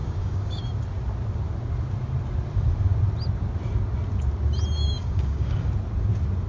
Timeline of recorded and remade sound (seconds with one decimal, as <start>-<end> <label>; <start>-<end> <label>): 0.0-0.6 remade; 0.6-5.0 recorded; 5.0-5.7 remade; 5.7-6.5 recorded